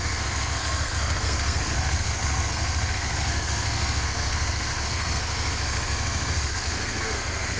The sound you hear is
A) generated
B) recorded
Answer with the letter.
A